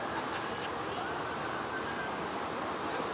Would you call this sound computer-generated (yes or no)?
no